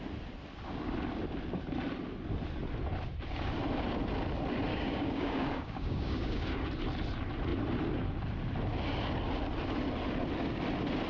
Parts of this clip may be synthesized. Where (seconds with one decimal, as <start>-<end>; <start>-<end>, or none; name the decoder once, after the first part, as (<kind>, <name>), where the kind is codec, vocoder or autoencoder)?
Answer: 4.7-6.6 (codec, DAC)